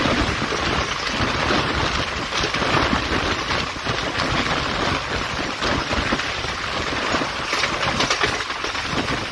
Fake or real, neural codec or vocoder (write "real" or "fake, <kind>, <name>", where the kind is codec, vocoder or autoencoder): real